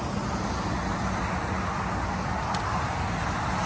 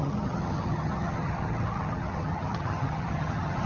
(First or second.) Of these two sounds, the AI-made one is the second